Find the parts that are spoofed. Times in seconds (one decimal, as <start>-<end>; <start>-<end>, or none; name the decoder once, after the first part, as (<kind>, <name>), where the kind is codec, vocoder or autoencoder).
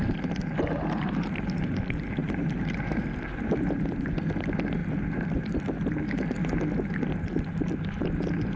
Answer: 2.2-3.0 (vocoder, BigVGAN v2)